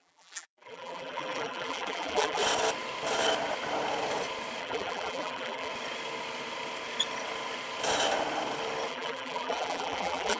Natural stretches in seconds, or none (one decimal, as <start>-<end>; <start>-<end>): 2.4-4.6; 5.7-8.9